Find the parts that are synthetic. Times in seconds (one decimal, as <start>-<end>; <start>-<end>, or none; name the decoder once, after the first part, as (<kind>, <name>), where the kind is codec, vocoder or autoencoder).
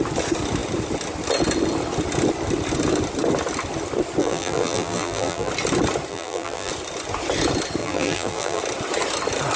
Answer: 4.2-5.5 (vocoder, BigVGAN v2); 6.1-6.7; 7.8-8.6